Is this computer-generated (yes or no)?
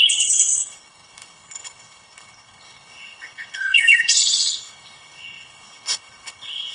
yes